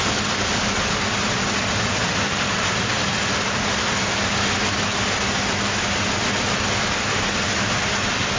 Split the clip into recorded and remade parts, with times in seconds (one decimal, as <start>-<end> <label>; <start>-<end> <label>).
0.0-8.4 recorded